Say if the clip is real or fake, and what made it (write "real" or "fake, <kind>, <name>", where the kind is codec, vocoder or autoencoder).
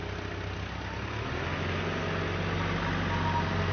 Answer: real